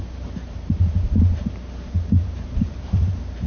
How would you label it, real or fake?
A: fake